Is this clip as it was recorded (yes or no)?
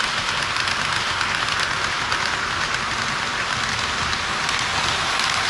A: yes